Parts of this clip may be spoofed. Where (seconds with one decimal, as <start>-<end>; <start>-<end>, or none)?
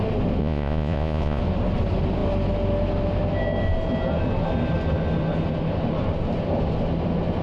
0.4-1.4